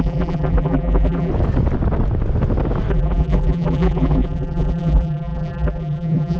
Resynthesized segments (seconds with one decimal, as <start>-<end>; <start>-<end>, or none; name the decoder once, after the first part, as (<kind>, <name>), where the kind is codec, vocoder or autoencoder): 0.0-1.3 (vocoder, BigVGAN v2); 2.9-6.4